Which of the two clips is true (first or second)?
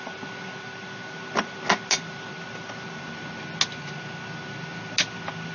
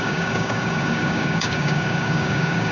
first